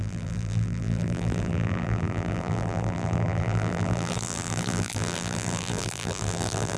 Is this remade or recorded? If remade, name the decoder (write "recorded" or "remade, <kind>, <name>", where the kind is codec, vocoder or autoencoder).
remade, vocoder, BigVGAN v2